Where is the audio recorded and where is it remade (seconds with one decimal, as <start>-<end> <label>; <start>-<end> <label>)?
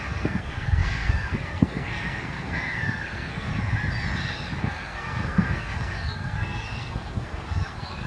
0.0-3.5 remade; 3.5-4.6 recorded; 4.6-8.1 remade